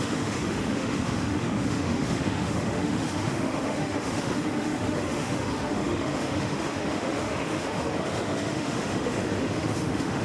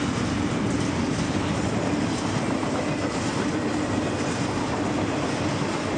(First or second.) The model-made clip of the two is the first